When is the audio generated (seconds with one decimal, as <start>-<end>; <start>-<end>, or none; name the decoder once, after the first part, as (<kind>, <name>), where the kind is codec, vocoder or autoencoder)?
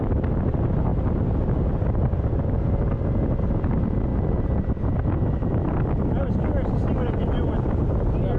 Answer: none